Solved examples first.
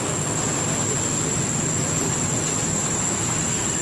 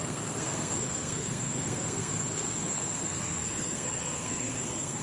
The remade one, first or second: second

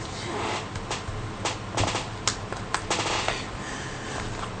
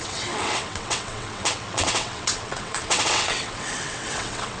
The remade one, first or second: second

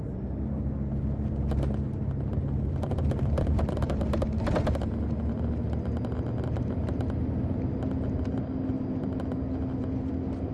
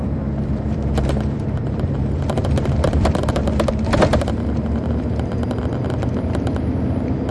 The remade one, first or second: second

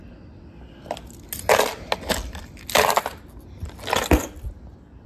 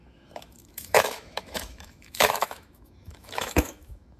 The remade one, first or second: second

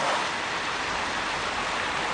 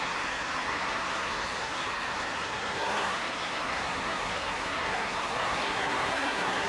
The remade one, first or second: second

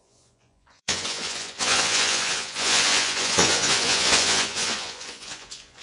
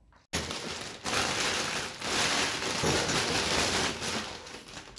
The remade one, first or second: first